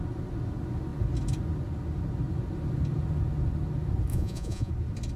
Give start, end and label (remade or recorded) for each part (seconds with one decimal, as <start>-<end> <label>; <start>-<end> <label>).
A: 0.0-4.1 recorded; 4.1-4.7 remade; 4.7-5.2 recorded